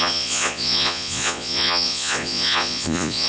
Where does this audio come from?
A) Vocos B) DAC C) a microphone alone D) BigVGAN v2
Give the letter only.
A